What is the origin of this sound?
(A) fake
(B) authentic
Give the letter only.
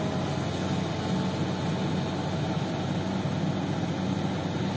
B